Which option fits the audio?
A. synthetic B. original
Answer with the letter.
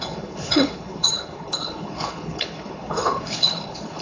A